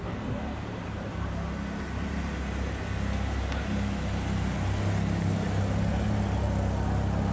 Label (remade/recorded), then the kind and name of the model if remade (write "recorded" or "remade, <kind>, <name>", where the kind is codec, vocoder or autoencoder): recorded